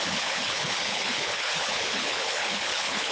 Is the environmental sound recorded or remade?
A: remade